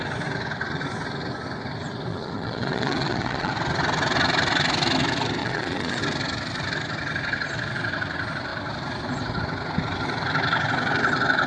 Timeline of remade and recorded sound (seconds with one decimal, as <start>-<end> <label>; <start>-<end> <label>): 0.0-2.1 recorded; 2.1-3.5 remade; 3.5-5.4 recorded; 5.4-6.0 remade; 6.0-11.5 recorded